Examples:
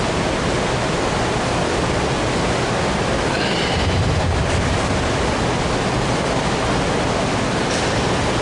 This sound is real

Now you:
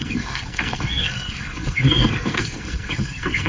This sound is fake